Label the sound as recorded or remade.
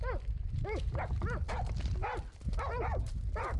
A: recorded